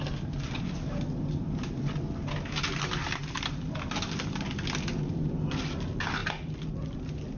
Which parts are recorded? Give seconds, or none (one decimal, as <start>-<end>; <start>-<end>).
0.0-7.4